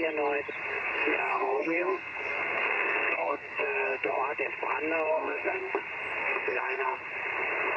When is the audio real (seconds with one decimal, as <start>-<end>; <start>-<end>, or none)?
0.0-0.7; 4.1-5.1; 5.8-6.2; 7.0-7.8